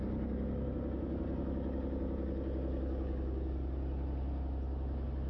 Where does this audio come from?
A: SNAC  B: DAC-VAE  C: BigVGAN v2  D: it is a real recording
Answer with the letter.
D